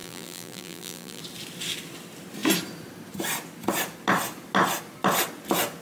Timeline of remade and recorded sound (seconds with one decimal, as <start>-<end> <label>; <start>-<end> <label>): 0.0-1.2 remade; 1.2-5.8 recorded